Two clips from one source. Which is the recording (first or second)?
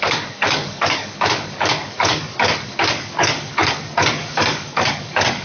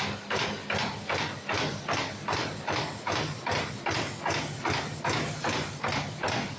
second